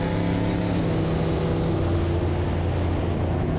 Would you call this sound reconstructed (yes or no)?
no